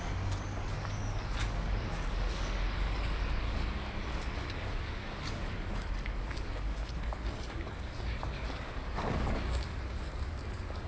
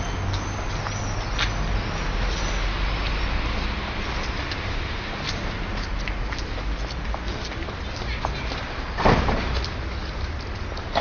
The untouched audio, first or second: second